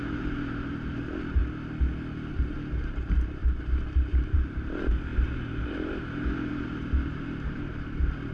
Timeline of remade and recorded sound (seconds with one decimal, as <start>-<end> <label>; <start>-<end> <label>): 0.0-1.4 remade; 1.4-2.3 recorded; 2.3-3.4 remade; 3.4-4.1 recorded; 4.1-8.3 remade